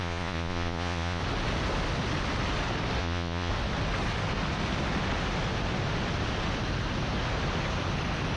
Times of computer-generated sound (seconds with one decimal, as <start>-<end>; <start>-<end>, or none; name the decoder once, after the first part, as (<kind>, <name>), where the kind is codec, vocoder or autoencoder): 0.0-1.2 (vocoder, Vocos); 3.0-3.5